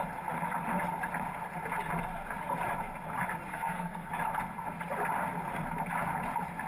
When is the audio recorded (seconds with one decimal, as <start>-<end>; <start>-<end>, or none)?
0.0-3.5; 4.1-6.7